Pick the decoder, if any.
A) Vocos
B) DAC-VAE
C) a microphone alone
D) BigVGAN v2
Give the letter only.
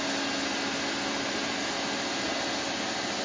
C